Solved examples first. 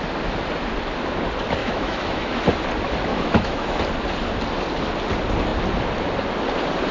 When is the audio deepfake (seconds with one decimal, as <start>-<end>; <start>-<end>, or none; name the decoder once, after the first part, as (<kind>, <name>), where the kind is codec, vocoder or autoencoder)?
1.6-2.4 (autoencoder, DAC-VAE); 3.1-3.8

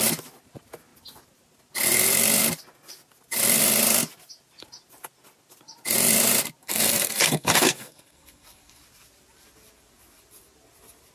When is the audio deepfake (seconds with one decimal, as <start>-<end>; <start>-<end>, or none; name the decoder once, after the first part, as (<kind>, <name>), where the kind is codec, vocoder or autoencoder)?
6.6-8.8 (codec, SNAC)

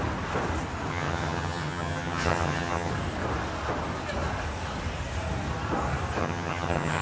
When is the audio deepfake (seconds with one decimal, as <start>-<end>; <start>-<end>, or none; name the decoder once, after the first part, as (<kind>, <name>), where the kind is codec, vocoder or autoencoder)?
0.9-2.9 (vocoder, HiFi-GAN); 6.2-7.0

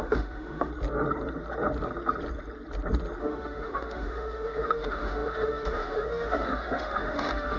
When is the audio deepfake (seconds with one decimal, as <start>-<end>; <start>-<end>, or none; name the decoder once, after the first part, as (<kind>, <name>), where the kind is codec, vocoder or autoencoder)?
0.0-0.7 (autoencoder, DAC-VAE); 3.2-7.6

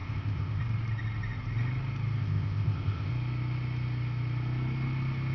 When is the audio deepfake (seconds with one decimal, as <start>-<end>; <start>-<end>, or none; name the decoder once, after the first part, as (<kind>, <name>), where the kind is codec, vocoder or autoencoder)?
0.0-0.6 (codec, ZipCodec); 2.2-3.1